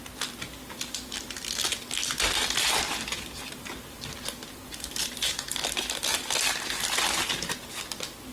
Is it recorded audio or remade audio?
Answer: recorded